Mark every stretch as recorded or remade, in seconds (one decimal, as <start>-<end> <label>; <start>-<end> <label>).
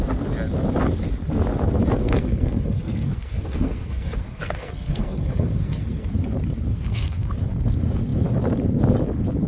0.0-2.0 recorded; 2.0-6.1 remade; 6.1-6.7 recorded; 6.7-7.3 remade; 7.3-9.5 recorded